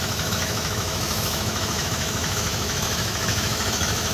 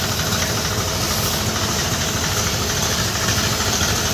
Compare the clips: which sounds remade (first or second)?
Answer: first